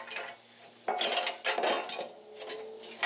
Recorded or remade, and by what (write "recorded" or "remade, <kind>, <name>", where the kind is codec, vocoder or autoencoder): recorded